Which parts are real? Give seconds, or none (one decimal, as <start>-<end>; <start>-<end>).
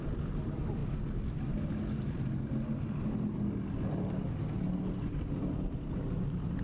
0.0-6.6